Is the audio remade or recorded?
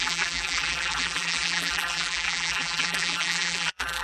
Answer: remade